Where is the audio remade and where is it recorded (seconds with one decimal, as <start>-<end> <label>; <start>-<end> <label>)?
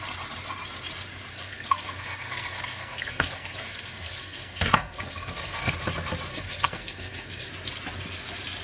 0.0-1.3 recorded; 1.3-5.7 remade; 5.7-6.3 recorded; 6.3-7.5 remade; 7.5-8.6 recorded